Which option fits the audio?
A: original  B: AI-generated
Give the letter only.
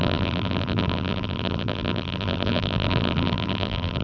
B